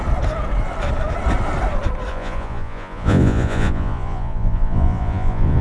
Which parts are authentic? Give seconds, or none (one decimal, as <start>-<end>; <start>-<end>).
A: 0.0-2.1